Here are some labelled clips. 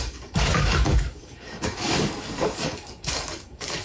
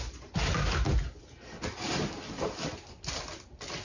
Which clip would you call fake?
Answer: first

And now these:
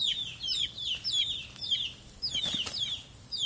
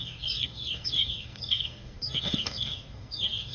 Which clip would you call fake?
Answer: second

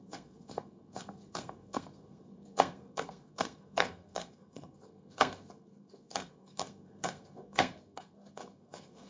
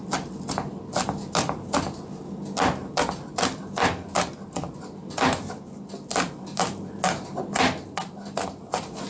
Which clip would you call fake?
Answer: first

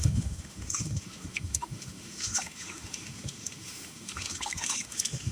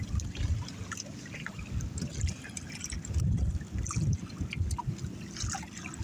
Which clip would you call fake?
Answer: first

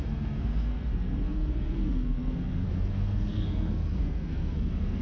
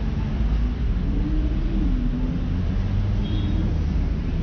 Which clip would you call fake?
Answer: first